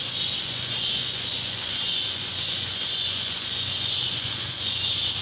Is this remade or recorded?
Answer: remade